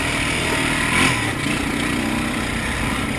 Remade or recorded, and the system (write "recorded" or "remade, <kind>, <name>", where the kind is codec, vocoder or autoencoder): recorded